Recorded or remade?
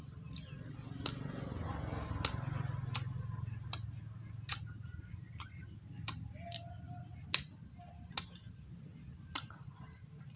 recorded